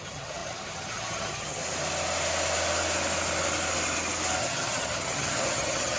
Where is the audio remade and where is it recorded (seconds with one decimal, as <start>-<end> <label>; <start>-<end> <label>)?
0.0-1.6 remade; 1.6-4.4 recorded; 4.4-6.0 remade